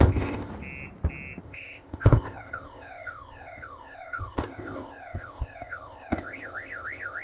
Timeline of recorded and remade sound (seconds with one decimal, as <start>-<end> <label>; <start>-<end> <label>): 0.0-0.5 remade; 0.5-1.4 recorded; 1.4-7.2 remade